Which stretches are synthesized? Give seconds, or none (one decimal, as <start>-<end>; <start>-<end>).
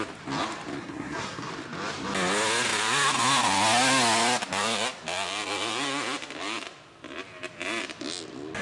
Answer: 0.8-1.5